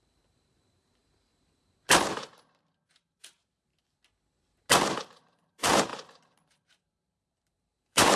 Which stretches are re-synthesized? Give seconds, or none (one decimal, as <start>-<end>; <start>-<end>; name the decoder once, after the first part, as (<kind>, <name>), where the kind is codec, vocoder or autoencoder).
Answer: 0.0-1.0 (vocoder, BigVGAN v2); 2.9-3.7; 5.0-8.2